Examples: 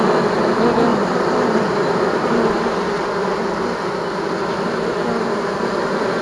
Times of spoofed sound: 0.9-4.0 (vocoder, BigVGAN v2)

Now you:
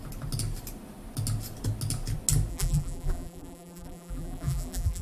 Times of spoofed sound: 2.5-5.0 (vocoder, BigVGAN v2)